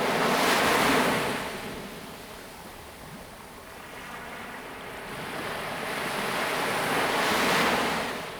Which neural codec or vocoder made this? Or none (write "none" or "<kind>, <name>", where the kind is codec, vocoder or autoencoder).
none